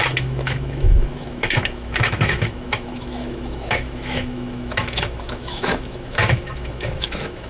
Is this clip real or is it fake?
fake